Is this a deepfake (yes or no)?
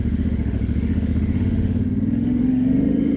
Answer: yes